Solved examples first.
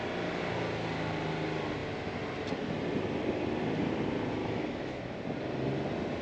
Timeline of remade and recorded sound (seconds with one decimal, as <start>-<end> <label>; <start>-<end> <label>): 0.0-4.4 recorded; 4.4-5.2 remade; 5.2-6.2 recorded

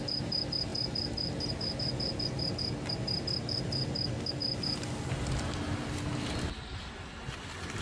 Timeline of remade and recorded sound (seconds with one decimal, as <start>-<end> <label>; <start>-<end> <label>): 0.0-7.8 recorded

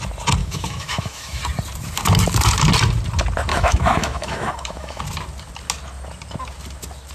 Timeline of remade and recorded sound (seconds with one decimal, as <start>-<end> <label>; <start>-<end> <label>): 0.0-0.4 recorded; 0.4-1.4 remade; 1.4-3.5 recorded; 3.5-5.0 remade; 5.0-7.1 recorded